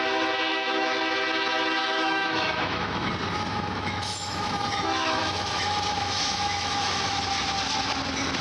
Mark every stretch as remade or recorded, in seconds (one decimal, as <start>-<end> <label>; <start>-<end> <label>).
0.0-0.5 recorded; 0.5-1.0 remade; 1.0-1.8 recorded; 1.8-3.1 remade; 3.1-3.5 recorded; 3.5-7.2 remade; 7.2-8.4 recorded